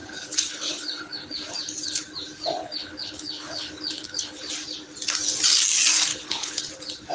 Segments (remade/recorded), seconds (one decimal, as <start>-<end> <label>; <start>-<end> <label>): 0.0-1.3 remade; 1.3-2.6 recorded; 2.6-4.5 remade; 4.5-6.1 recorded; 6.1-6.6 remade; 6.6-7.1 recorded